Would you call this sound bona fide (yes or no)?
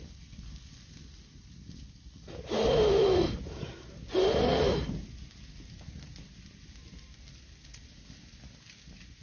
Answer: yes